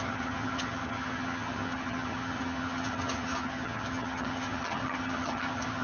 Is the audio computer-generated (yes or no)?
yes